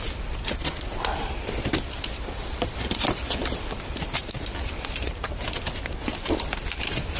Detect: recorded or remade remade